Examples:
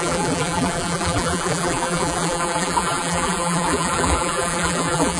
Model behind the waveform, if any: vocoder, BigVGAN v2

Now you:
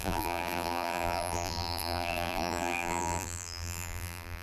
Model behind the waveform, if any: vocoder, BigVGAN v2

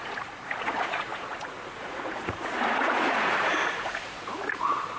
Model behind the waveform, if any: vocoder, Vocos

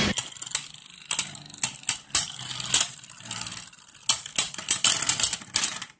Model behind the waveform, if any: none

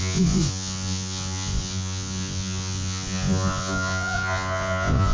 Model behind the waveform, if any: vocoder, Vocos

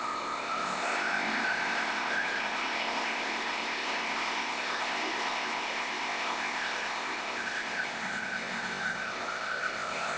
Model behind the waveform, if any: codec, ZipCodec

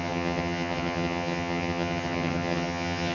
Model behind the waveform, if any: vocoder, HiFi-GAN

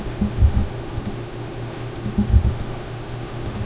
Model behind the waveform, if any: autoencoder, DAC-VAE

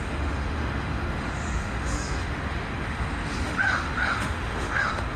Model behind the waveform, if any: autoencoder, DAC-VAE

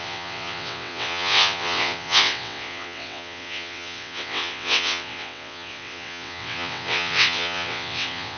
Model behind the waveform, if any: vocoder, WaveNeXt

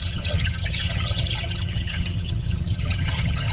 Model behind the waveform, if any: vocoder, HiFi-GAN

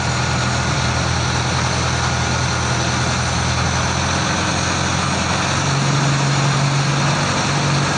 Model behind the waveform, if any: none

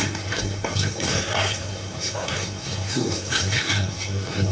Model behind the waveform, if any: codec, SNAC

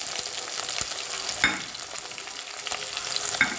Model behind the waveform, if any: none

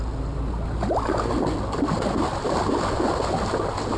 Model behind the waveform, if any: none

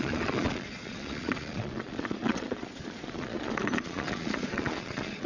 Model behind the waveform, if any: vocoder, Vocos